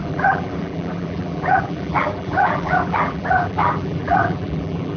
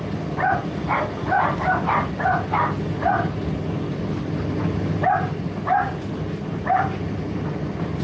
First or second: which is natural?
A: second